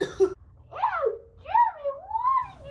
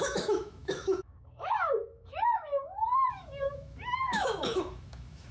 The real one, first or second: first